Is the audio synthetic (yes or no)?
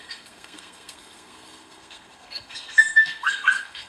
yes